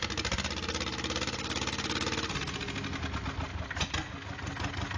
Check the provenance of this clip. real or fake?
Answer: real